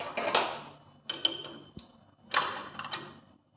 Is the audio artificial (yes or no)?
no